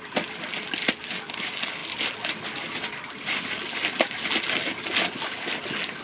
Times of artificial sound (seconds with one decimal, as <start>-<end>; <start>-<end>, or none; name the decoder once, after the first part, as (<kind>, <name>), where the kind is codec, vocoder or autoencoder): none